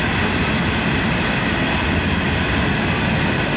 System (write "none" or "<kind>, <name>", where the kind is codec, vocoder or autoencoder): none